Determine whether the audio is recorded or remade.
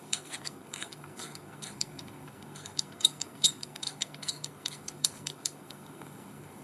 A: remade